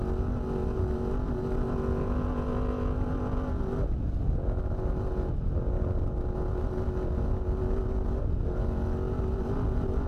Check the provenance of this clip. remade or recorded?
recorded